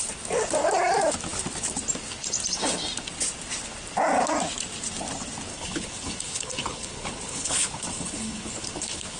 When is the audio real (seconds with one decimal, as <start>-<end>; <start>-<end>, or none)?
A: 0.0-5.5

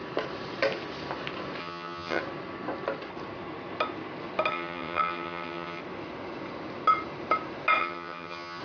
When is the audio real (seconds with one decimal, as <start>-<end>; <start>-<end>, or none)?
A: 0.0-1.6; 2.2-4.5; 5.8-7.8

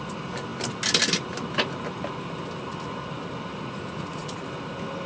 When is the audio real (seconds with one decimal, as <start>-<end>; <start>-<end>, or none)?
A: 0.0-3.5; 4.4-5.1

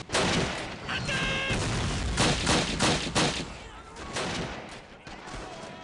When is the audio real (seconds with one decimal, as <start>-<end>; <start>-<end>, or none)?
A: 0.0-5.8

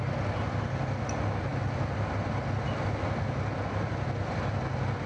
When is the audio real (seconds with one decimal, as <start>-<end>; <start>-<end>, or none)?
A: 0.0-5.1

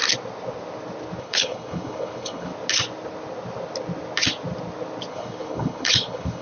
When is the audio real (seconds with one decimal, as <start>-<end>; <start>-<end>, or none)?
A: 0.0-1.2; 2.5-5.1

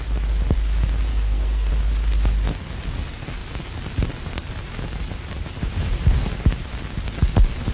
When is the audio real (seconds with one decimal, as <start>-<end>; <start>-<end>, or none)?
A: 0.0-1.1; 1.7-7.7